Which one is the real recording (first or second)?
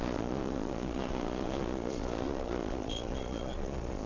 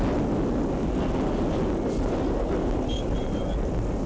second